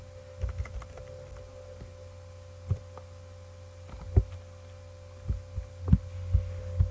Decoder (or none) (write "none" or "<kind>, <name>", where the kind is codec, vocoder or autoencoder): none